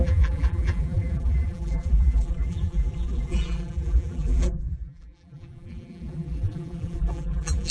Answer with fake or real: fake